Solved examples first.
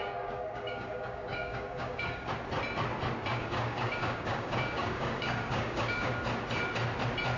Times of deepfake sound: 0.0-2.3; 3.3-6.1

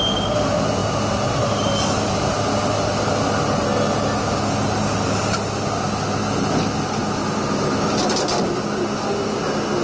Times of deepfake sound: none

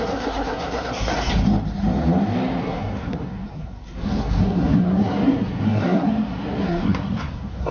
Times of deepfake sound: 0.0-1.1; 2.6-7.7

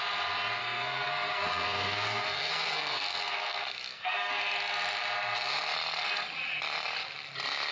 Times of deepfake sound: 0.6-4.3

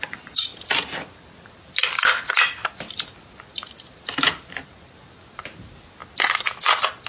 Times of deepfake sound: 0.0-0.5; 1.5-2.6; 3.5-6.0

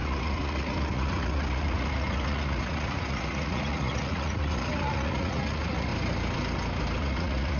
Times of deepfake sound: 0.0-5.9; 7.0-7.6

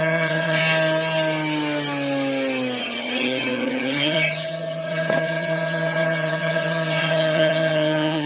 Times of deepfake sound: 0.0-0.6; 2.8-8.3